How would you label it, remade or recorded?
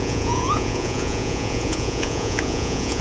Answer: remade